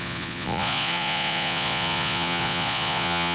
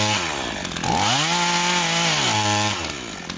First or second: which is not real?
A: first